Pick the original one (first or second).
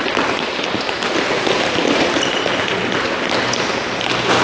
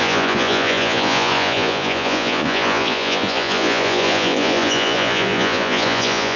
first